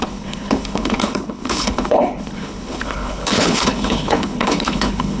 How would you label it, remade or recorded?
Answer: remade